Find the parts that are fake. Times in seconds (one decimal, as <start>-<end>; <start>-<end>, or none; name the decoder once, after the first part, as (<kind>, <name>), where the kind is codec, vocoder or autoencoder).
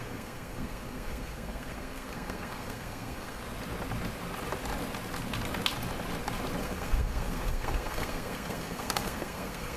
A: 0.0-3.4 (codec, SNAC); 6.6-9.8